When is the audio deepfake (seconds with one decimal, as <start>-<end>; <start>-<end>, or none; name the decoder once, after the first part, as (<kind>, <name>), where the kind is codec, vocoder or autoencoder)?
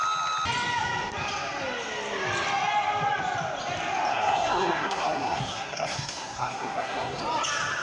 4.1-7.2 (codec, SNAC)